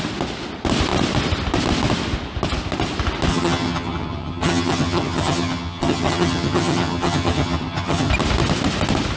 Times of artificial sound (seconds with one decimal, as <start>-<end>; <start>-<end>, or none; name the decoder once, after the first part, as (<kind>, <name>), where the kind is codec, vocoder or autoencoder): 3.3-8.1 (vocoder, HiFi-GAN)